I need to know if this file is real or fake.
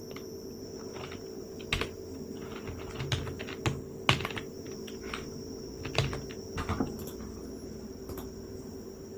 real